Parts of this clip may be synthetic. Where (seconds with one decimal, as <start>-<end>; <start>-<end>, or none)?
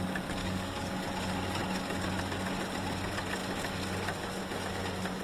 0.4-0.9